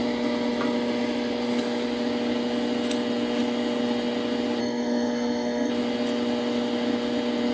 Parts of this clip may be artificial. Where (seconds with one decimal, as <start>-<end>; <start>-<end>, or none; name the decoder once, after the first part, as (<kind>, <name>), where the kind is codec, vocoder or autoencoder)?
4.6-5.7 (codec, SNAC)